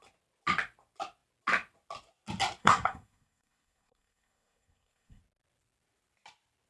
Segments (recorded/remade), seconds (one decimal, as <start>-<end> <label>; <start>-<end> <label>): 0.0-2.6 recorded; 2.6-5.2 remade; 5.2-6.7 recorded